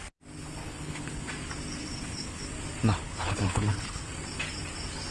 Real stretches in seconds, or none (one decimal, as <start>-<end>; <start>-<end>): 0.0-0.6; 1.3-1.8; 2.4-3.0; 4.1-5.1